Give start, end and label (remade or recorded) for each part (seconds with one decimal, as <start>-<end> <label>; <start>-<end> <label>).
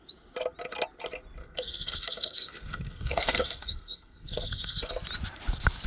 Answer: 0.0-1.4 recorded; 1.4-4.9 remade; 4.9-5.9 recorded